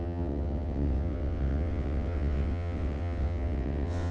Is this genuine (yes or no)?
no